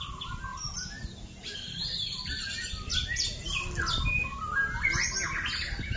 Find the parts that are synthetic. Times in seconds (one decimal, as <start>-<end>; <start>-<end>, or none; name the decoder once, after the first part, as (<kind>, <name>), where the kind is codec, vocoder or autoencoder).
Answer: none

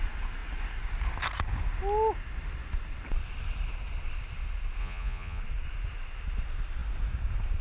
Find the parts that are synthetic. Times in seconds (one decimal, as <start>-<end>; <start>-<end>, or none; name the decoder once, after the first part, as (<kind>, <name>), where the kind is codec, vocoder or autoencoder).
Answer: 4.8-5.4 (vocoder, Vocos)

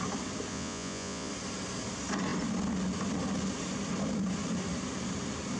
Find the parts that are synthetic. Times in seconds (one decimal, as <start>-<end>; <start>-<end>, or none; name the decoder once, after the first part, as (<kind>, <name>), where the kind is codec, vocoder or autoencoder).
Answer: 0.5-1.3 (vocoder, Vocos)

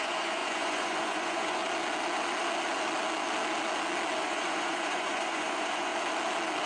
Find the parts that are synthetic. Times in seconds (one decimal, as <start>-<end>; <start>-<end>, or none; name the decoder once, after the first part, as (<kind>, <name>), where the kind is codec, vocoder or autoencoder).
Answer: 0.0-1.6 (vocoder, Vocos); 4.2-5.9

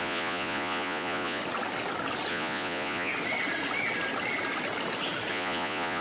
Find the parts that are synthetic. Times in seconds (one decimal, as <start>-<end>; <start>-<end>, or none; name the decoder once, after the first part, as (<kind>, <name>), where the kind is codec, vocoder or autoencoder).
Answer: 0.0-1.4 (vocoder, Vocos); 2.3-3.1; 5.3-6.0

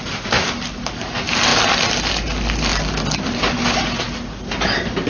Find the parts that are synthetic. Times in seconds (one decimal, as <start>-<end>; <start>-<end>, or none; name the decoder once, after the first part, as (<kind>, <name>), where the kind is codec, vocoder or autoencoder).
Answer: none